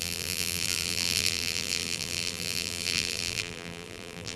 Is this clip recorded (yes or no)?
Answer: no